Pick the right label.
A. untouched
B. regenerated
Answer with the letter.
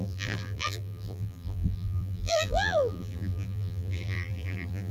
B